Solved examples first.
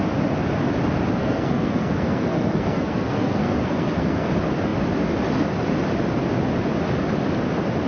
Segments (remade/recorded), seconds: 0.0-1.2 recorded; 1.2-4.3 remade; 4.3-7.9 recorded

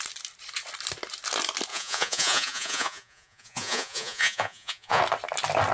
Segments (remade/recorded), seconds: 0.0-1.7 recorded; 1.7-5.0 remade; 5.0-5.7 recorded

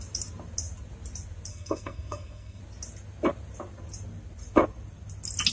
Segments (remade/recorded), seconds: 0.0-1.5 recorded; 1.5-2.6 remade; 2.6-5.5 recorded